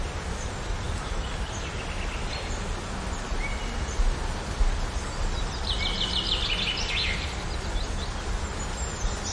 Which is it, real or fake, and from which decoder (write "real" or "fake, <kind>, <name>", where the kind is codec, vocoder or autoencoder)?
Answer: real